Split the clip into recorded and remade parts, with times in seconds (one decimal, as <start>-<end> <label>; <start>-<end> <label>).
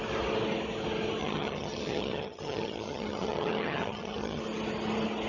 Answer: 0.0-1.2 recorded; 1.2-4.4 remade; 4.4-5.3 recorded